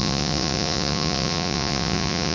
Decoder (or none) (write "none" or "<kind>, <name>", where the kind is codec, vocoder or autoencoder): vocoder, Vocos